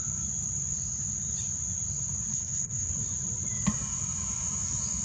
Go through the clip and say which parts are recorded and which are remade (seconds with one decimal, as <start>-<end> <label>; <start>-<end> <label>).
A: 0.0-2.3 recorded; 2.3-2.9 remade; 2.9-5.0 recorded

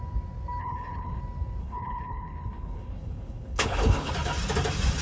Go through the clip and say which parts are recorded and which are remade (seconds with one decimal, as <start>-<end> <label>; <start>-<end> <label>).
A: 0.0-0.6 recorded; 0.6-1.2 remade; 1.2-1.6 recorded; 1.6-4.1 remade; 4.1-5.0 recorded

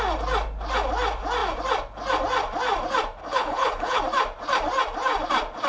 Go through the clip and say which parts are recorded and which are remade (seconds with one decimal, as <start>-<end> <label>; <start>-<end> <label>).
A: 0.0-3.2 recorded; 3.2-4.0 remade; 4.0-5.7 recorded

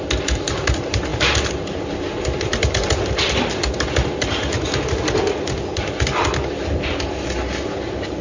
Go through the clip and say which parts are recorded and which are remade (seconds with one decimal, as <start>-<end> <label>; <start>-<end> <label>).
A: 0.0-8.2 recorded

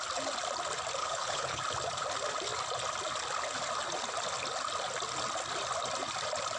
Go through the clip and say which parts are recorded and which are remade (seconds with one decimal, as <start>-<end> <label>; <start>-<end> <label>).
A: 0.0-1.0 recorded; 1.0-1.6 remade; 1.6-6.6 recorded